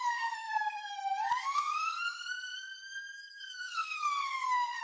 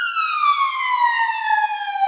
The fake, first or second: first